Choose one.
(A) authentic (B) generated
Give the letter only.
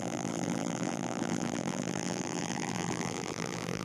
B